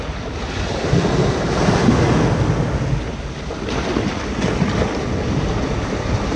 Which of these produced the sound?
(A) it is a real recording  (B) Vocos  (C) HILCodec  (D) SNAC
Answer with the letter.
A